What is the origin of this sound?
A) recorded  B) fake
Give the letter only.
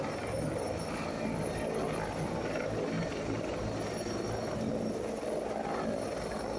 A